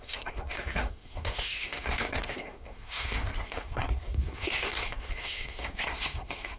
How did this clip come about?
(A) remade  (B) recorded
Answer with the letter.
A